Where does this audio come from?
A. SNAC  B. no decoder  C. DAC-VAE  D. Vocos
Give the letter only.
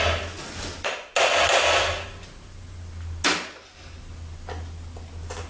B